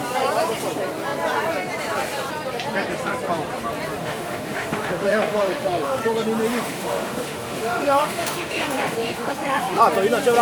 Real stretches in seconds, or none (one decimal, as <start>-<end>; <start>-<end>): 0.0-4.0; 6.0-6.5; 9.8-10.4